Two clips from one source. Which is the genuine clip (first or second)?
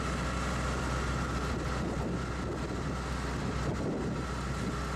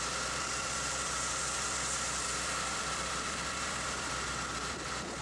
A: first